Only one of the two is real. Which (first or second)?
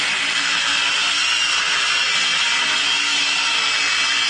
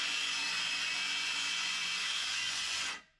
first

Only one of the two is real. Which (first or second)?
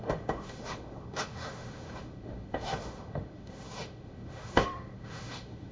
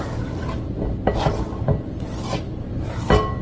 second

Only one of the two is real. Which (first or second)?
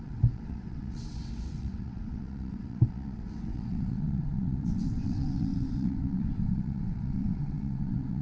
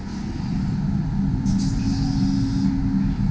second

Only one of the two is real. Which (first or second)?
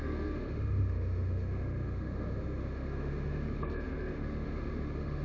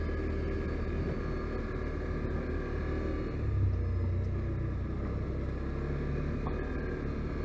second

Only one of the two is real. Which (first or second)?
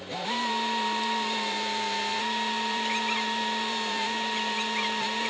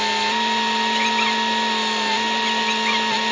second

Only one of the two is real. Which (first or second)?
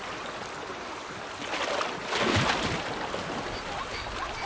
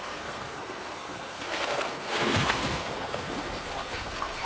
first